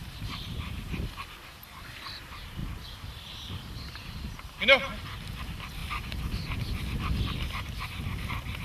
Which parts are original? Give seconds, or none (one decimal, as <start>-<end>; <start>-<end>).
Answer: 1.2-8.6